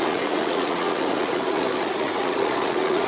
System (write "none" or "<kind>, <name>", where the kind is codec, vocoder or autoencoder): vocoder, Vocos